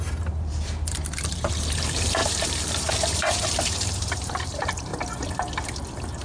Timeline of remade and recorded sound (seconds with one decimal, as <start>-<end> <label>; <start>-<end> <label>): 0.0-4.9 remade; 4.9-6.2 recorded

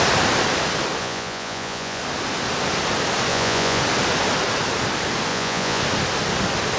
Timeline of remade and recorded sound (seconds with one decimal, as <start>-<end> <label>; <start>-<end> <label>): 0.0-1.0 recorded; 1.0-2.0 remade; 2.0-3.3 recorded; 3.3-3.8 remade; 3.8-5.3 recorded; 5.3-5.8 remade; 5.8-6.8 recorded